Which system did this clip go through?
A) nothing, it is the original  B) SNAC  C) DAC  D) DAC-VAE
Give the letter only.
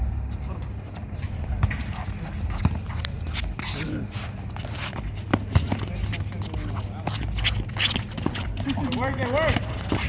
A